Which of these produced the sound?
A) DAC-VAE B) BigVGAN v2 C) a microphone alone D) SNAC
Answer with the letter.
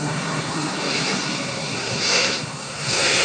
D